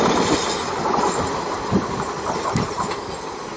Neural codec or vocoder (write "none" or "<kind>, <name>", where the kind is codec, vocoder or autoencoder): none